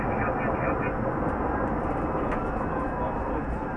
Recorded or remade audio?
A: recorded